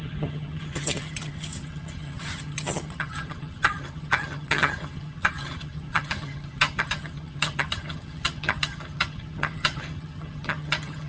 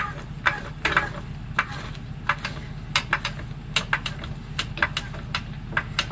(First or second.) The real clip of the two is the second